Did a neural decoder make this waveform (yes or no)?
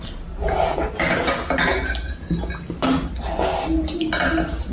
no